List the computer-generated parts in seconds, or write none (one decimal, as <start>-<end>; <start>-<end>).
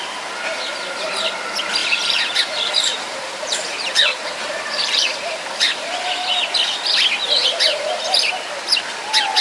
1.8-6.3; 7.4-8.3